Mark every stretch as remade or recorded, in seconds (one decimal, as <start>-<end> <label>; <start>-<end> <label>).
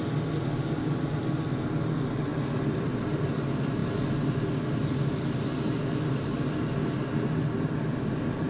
0.0-2.3 recorded; 2.3-3.0 remade; 3.0-8.5 recorded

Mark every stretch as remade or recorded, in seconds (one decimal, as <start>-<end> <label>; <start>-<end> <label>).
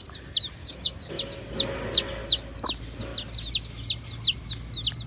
0.0-0.6 recorded; 0.6-1.2 remade; 1.2-5.1 recorded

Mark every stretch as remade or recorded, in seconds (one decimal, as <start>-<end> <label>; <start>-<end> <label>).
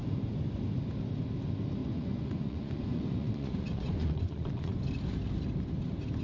0.0-1.8 recorded; 1.8-4.8 remade; 4.8-6.2 recorded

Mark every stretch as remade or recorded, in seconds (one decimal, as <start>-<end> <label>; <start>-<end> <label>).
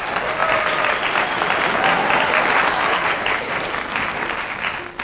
0.0-2.9 recorded; 2.9-3.5 remade; 3.5-5.0 recorded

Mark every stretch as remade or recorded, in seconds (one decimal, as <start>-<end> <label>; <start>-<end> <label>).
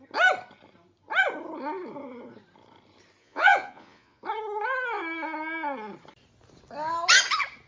0.0-3.2 recorded; 3.2-4.2 remade; 4.2-7.7 recorded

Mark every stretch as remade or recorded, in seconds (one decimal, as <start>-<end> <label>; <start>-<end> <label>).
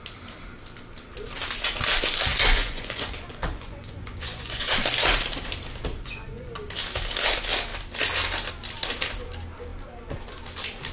0.0-2.3 recorded; 2.3-4.7 remade; 4.7-5.9 recorded; 5.9-6.5 remade; 6.5-10.9 recorded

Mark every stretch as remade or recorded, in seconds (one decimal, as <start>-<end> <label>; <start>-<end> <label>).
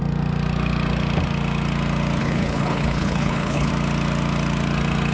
0.0-2.2 recorded; 2.2-3.7 remade; 3.7-5.1 recorded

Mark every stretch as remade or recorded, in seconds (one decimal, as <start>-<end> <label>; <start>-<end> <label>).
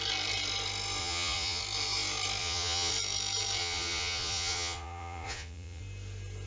0.0-1.0 recorded; 1.0-1.6 remade; 1.6-2.4 recorded; 2.4-2.9 remade; 2.9-3.6 recorded; 3.6-5.8 remade; 5.8-6.5 recorded